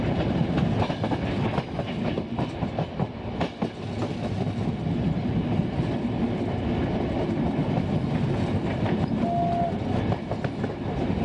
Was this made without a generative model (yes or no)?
yes